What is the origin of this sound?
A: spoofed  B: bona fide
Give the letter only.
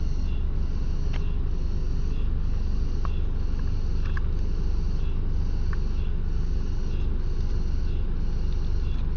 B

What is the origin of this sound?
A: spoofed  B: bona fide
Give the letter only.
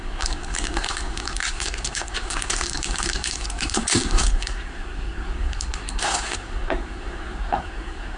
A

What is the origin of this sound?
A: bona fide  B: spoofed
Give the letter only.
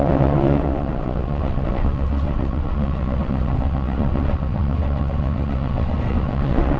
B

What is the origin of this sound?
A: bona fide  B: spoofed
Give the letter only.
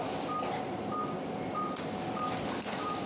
A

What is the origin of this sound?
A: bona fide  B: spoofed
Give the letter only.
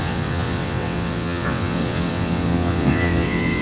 B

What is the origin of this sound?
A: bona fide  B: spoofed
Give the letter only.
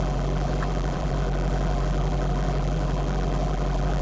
B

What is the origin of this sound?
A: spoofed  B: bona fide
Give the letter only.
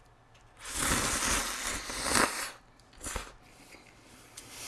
B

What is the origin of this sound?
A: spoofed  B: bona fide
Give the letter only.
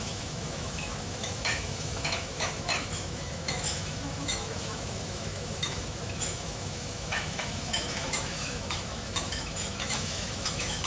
A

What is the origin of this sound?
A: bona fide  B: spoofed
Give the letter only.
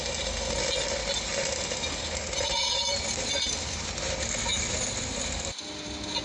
A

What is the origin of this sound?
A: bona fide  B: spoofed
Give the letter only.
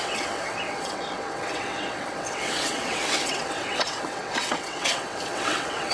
B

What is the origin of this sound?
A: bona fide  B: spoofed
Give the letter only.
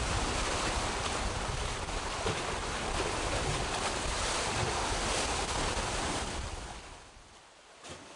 A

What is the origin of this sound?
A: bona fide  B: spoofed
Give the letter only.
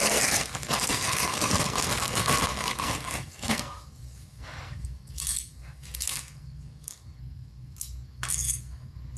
B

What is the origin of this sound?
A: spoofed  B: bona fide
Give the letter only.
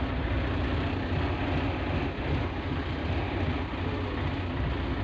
B